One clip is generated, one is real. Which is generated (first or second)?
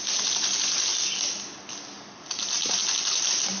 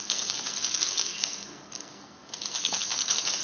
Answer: second